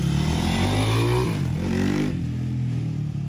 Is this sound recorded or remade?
recorded